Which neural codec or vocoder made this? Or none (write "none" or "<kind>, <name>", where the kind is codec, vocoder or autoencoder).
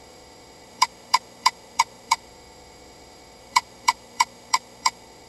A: autoencoder, DAC-VAE